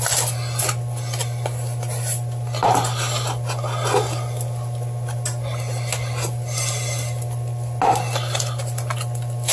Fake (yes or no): no